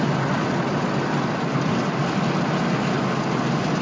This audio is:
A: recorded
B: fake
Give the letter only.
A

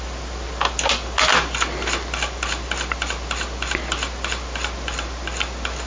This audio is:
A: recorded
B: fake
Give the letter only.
A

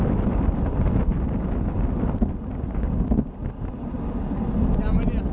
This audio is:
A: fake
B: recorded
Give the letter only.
B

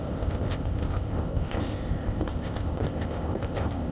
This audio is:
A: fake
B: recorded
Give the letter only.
A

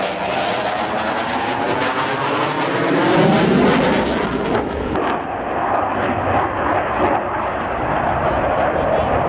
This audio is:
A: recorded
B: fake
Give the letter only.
A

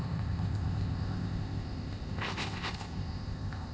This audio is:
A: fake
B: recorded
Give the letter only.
A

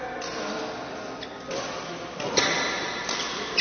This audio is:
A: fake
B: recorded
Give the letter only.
B